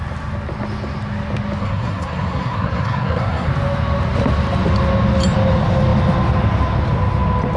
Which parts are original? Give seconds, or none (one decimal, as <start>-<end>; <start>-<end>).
0.0-1.6; 3.5-7.6